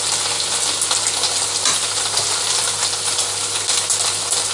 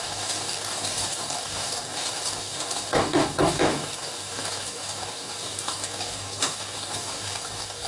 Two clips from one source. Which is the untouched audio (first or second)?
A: first